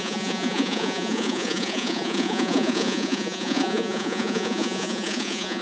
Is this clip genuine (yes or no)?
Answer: no